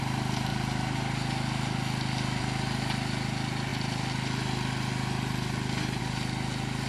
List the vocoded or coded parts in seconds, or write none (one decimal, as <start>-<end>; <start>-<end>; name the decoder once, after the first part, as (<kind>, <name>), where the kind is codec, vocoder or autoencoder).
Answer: none